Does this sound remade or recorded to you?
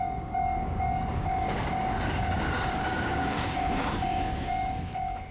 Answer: remade